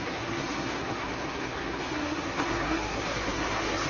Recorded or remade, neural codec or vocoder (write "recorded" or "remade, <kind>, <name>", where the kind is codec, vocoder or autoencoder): remade, codec, SNAC